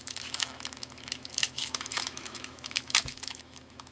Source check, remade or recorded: remade